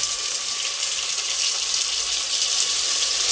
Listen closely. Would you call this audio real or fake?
real